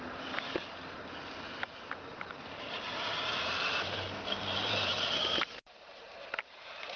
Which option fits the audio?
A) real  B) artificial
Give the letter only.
B